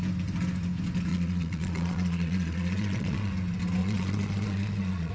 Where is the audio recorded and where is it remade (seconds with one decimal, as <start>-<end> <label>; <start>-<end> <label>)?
0.0-1.1 recorded; 1.1-3.3 remade; 3.3-3.8 recorded; 3.8-5.1 remade